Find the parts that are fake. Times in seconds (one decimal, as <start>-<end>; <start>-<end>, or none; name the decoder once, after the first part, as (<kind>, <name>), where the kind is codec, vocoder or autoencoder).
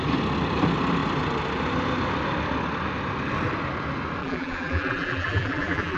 4.2-6.0 (vocoder, BigVGAN v2)